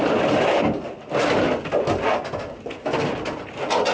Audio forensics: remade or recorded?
recorded